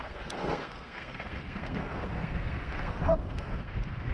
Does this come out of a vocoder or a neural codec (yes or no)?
yes